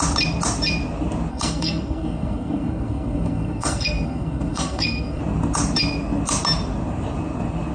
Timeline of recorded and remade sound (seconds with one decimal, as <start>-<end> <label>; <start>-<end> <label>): 0.0-1.3 recorded; 1.3-5.2 remade; 5.2-7.7 recorded